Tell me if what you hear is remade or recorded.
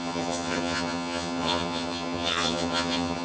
remade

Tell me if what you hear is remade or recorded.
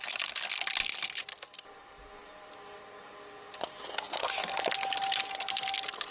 recorded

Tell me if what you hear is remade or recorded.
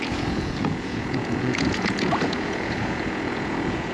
remade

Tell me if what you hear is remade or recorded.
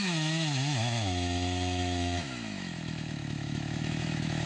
remade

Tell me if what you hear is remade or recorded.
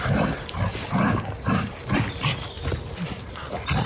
recorded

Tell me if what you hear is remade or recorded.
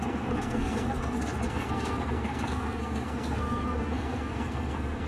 remade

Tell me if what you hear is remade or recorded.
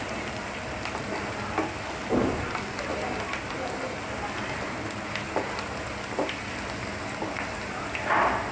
recorded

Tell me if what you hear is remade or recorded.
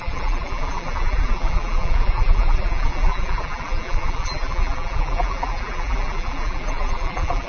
remade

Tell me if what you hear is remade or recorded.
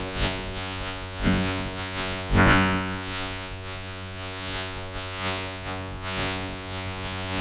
remade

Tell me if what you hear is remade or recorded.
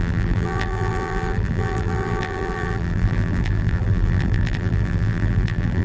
remade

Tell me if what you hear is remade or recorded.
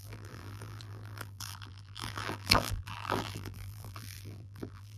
remade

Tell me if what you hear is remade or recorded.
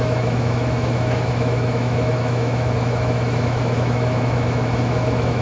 remade